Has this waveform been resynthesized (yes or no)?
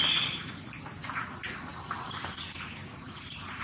no